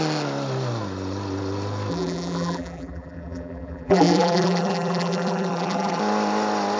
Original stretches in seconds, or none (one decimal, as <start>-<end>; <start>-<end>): 0.0-1.9; 6.0-6.8

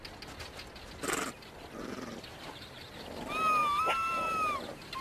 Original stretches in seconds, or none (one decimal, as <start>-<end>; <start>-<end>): 0.0-2.3; 2.9-3.6

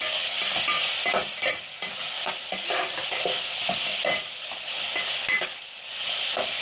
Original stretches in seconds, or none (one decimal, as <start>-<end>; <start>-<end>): 0.0-6.6

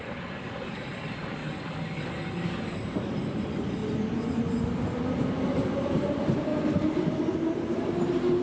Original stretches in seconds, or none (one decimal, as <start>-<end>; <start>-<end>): 1.4-2.1; 3.8-5.1; 6.5-7.4

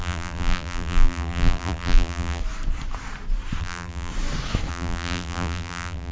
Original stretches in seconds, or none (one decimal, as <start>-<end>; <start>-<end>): 2.4-3.6; 4.1-4.7

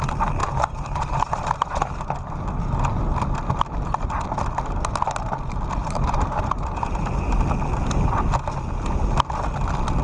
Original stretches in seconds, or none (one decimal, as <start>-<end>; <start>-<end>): 0.0-0.4; 2.2-5.8; 7.4-10.0

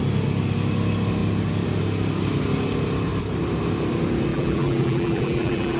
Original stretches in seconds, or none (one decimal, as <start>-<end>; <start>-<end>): 0.0-4.3